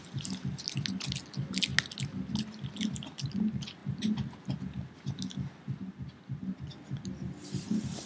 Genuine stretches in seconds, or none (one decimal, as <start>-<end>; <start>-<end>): 0.0-3.8; 4.6-8.1